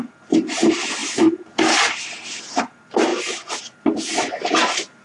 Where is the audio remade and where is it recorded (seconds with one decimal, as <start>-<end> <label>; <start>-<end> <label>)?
0.0-3.1 recorded; 3.1-3.6 remade; 3.6-5.0 recorded